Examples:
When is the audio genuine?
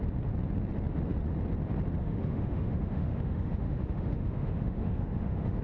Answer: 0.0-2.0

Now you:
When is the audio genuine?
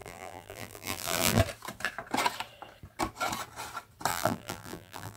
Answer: 1.4-4.1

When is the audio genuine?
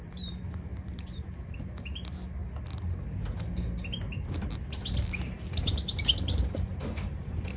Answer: 2.4-4.3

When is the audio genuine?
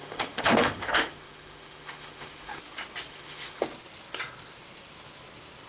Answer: 2.6-3.1; 3.6-5.7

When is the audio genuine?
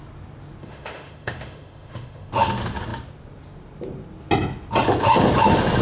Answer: 0.0-0.6; 2.3-5.8